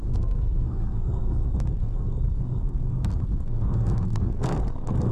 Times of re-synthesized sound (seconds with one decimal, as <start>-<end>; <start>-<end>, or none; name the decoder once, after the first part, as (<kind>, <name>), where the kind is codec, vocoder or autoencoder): 0.0-5.1 (codec, SNAC)